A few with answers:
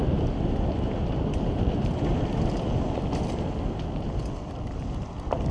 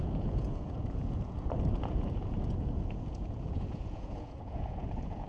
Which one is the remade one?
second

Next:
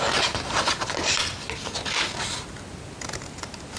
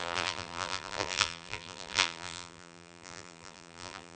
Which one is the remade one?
second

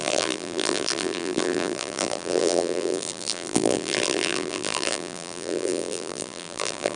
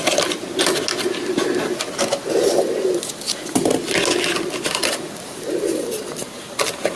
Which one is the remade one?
first